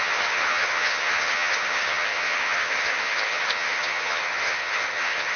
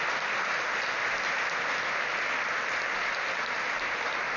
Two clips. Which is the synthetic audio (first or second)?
first